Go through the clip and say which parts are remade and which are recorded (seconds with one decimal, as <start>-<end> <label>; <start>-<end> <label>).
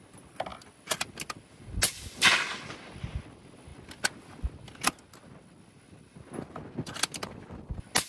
0.0-8.1 recorded